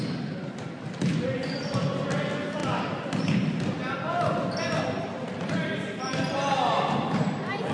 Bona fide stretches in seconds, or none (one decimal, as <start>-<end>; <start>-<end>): 0.0-7.7